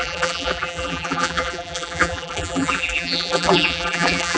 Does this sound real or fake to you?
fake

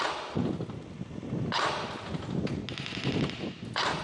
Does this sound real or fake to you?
real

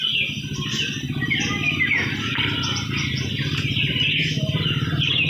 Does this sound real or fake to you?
real